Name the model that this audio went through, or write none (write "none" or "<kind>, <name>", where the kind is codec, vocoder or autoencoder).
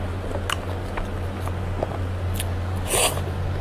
none